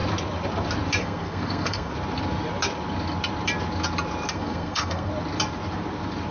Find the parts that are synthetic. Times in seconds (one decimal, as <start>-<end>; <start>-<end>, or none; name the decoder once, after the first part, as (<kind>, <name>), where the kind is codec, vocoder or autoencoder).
1.0-1.9 (codec, SNAC); 4.3-5.1